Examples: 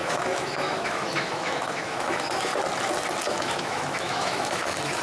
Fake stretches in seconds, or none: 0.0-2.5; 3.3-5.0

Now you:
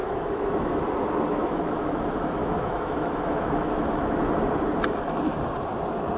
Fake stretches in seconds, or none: 0.0-0.8; 1.3-2.0; 2.4-4.2

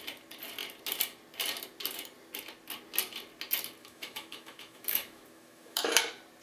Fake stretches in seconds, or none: 3.8-6.0